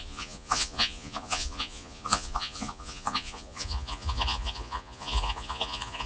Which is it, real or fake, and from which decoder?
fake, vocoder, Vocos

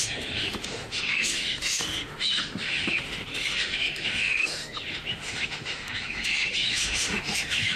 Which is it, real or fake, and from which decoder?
fake, autoencoder, DAC-VAE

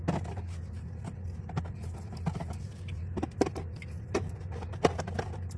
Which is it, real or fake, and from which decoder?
real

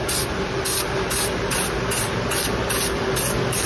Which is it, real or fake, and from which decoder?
real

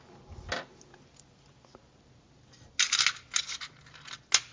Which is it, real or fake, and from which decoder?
real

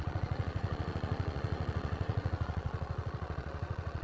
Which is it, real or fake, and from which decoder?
fake, vocoder, Vocos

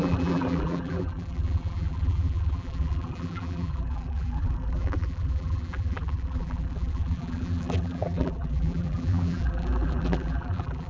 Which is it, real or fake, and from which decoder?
fake, vocoder, BigVGAN v2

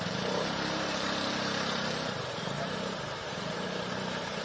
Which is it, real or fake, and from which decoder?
fake, vocoder, BigVGAN v2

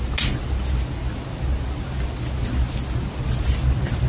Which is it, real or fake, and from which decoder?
real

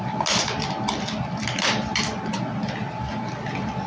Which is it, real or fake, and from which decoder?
real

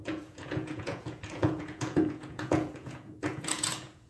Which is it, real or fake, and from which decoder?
fake, vocoder, Vocos